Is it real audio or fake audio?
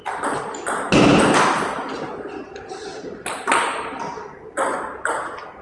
real